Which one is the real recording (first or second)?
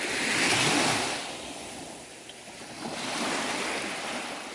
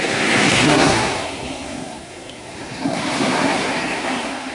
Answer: first